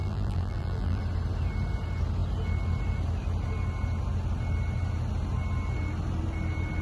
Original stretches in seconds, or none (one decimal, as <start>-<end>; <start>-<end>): 1.0-6.8